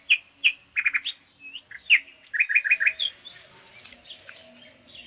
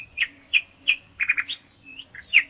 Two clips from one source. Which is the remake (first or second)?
second